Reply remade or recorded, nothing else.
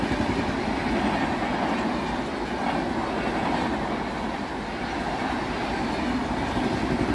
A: recorded